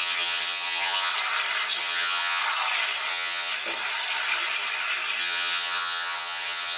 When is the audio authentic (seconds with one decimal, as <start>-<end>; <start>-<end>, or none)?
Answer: 1.1-1.8; 2.4-3.1; 3.5-5.2